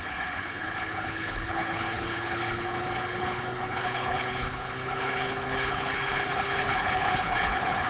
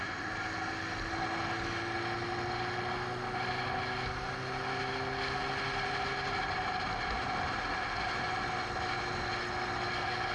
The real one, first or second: second